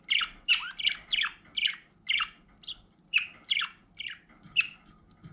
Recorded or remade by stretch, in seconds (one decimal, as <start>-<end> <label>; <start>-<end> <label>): 0.0-5.3 recorded